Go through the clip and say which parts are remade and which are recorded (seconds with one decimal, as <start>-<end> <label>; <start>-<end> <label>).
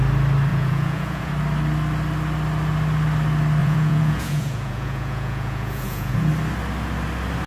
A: 0.0-0.5 recorded; 0.5-1.3 remade; 1.3-3.6 recorded; 3.6-6.3 remade; 6.3-7.5 recorded